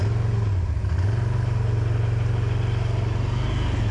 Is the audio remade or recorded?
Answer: recorded